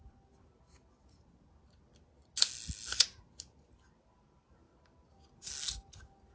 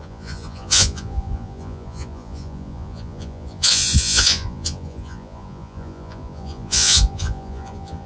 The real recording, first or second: first